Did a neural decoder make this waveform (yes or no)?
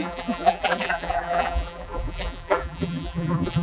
yes